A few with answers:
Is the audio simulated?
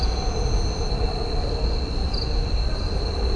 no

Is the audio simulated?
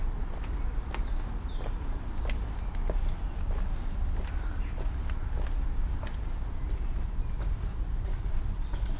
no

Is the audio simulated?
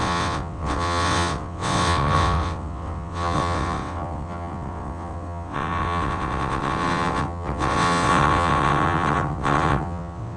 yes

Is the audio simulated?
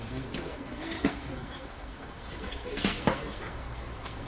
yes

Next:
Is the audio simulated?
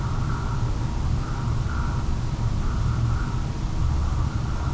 no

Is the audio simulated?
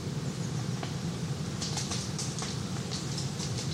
no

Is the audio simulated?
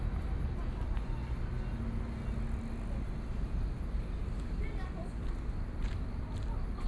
no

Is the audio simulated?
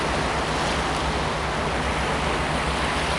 no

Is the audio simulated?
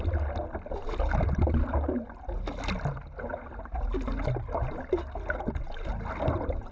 no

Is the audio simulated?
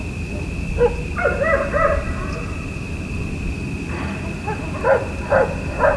no